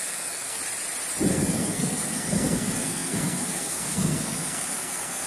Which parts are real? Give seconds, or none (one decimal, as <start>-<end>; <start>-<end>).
0.6-1.3